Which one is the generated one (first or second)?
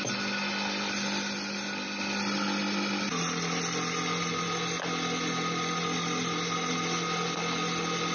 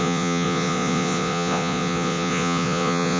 second